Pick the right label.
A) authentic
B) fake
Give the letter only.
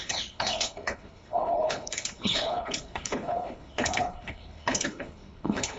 B